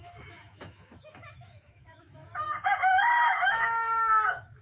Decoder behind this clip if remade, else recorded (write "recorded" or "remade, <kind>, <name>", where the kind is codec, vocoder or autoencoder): remade, autoencoder, DAC-VAE